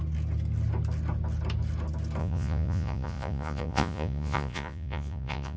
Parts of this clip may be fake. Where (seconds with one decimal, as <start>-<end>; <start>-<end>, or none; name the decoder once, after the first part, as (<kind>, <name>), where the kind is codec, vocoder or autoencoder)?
2.2-5.6 (vocoder, Vocos)